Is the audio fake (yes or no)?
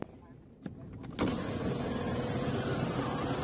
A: no